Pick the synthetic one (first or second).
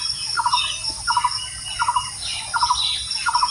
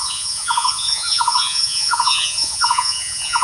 second